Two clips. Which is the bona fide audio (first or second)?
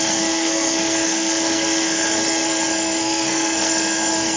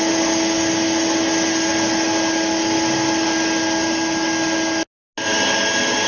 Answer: second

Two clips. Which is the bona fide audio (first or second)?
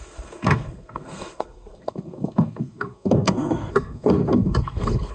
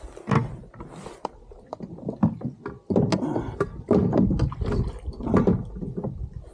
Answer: second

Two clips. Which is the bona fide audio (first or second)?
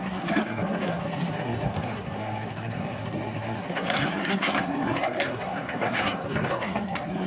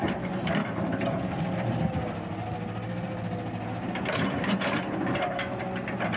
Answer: second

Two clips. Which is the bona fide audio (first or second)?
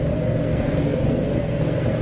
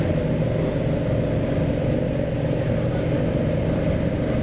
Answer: second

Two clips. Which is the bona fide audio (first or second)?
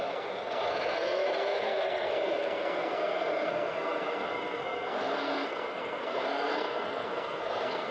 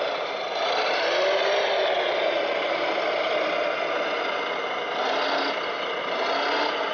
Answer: second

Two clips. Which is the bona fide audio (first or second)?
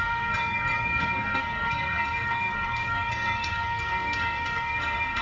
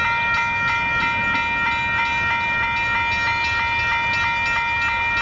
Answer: second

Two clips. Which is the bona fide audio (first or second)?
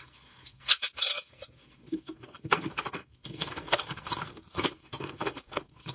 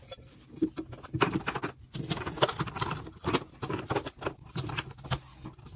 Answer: second